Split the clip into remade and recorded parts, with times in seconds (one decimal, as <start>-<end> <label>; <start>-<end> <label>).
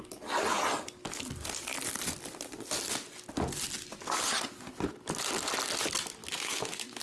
0.0-6.2 recorded; 6.2-7.0 remade